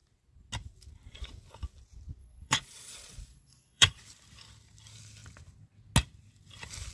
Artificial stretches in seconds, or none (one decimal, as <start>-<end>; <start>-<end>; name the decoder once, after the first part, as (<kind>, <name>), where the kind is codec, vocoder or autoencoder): 2.2-4.0 (vocoder, Vocos)